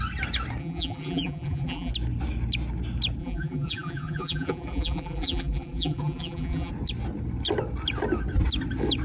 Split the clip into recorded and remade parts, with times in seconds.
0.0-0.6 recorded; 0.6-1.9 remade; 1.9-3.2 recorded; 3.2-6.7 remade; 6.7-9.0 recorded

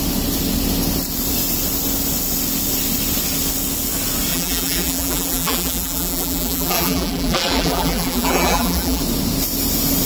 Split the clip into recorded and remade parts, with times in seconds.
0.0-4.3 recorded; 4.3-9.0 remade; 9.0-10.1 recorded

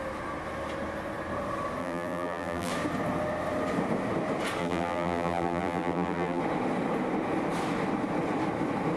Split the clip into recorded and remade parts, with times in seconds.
0.0-1.8 recorded; 1.8-2.7 remade; 2.7-4.6 recorded; 4.6-6.4 remade; 6.4-9.0 recorded